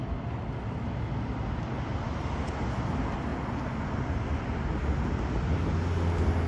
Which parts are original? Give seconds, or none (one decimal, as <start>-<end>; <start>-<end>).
0.0-6.5